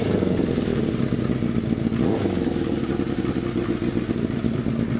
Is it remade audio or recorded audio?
recorded